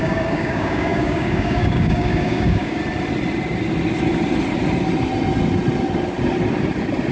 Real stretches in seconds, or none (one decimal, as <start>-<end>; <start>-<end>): 2.8-7.1